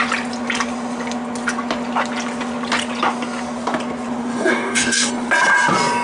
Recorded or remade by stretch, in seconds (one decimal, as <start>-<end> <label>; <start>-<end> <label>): 0.0-4.3 recorded; 4.3-5.1 remade; 5.1-6.0 recorded